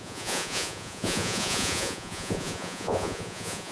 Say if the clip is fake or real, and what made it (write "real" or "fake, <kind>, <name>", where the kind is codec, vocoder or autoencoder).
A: fake, vocoder, Vocos